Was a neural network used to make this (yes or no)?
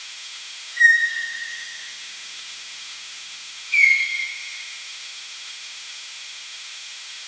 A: yes